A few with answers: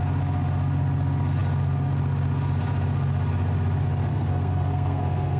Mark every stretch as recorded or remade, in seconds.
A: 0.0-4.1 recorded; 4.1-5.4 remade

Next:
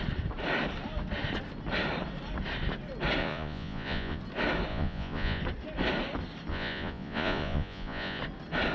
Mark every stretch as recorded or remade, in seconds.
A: 0.0-3.2 recorded; 3.2-4.2 remade; 4.2-4.7 recorded; 4.7-5.4 remade; 5.4-6.5 recorded; 6.5-8.2 remade; 8.2-8.7 recorded